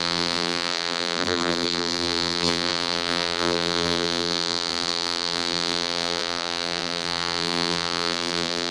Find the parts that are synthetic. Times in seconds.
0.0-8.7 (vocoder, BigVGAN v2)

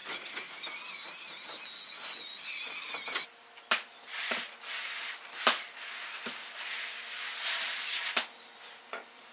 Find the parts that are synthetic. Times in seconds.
0.0-0.5 (vocoder, Vocos)

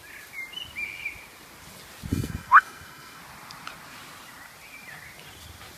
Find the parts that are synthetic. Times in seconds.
2.1-3.2 (codec, SNAC)

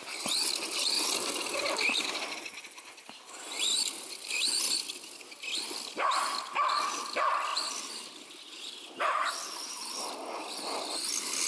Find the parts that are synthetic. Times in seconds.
none